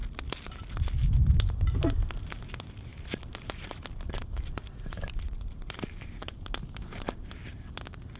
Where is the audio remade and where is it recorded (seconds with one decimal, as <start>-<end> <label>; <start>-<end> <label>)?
0.0-2.9 recorded; 2.9-7.2 remade; 7.2-8.2 recorded